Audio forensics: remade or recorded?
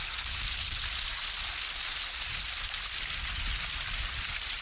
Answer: recorded